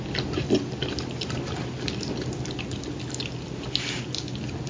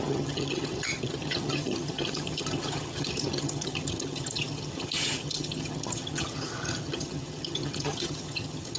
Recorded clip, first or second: first